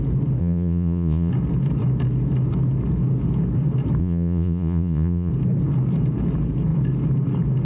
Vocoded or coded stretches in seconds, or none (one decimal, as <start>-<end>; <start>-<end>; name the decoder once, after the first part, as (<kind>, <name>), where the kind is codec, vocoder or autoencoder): 0.4-1.3 (vocoder, Vocos); 4.0-5.3